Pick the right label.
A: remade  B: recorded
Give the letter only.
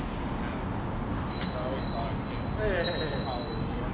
B